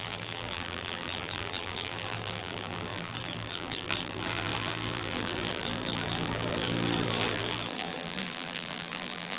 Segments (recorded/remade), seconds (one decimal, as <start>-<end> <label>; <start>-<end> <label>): 0.0-9.4 remade